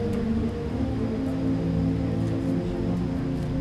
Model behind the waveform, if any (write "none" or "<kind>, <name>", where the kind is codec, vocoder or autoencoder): none